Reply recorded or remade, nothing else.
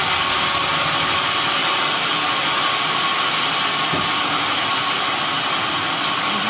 recorded